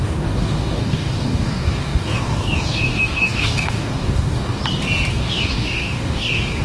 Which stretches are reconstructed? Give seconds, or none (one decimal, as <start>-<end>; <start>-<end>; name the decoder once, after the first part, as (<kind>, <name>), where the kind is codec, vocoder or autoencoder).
0.0-4.6 (codec, DAC); 5.1-6.6